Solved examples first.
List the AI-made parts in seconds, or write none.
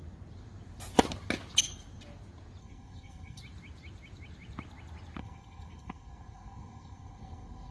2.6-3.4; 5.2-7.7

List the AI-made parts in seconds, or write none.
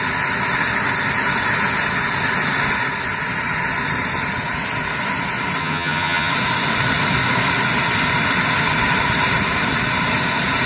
5.6-6.3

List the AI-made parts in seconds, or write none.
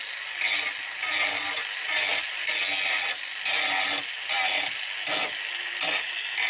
none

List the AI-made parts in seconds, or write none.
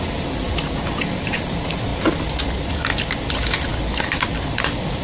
3.7-4.4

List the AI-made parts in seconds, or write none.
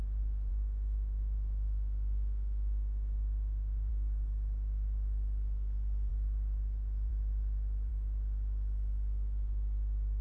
0.5-3.9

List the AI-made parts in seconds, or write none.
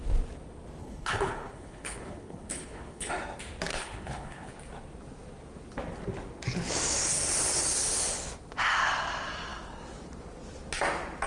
0.8-3.1; 3.7-4.5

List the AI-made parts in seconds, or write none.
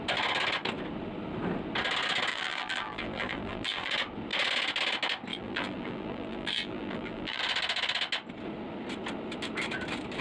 2.3-3.9; 5.3-7.4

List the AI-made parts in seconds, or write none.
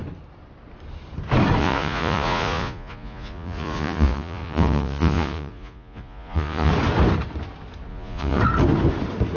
1.6-6.7; 7.9-8.4